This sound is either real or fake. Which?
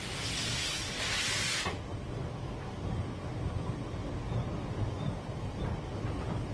real